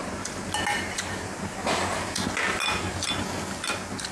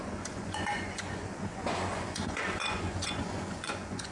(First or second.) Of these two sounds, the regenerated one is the second